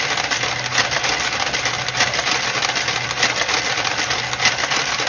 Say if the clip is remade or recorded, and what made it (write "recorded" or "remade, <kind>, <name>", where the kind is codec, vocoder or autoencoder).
recorded